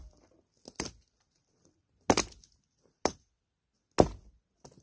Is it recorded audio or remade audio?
recorded